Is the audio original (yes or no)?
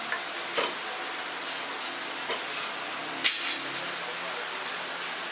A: yes